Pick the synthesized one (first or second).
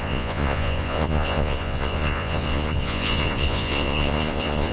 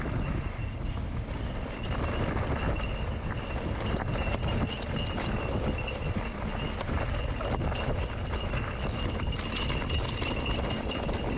first